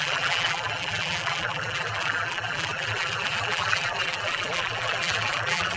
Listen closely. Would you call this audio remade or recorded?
remade